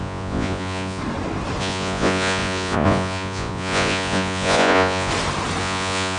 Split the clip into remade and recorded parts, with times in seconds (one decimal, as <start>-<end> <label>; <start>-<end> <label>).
0.0-1.0 remade; 1.0-1.6 recorded; 1.6-5.1 remade; 5.1-5.6 recorded; 5.6-6.2 remade